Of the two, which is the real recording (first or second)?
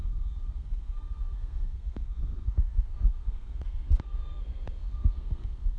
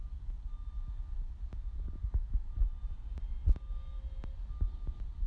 second